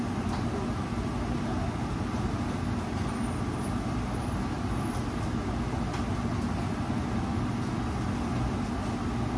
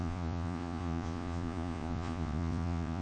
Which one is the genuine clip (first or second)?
first